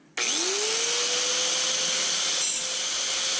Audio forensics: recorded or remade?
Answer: recorded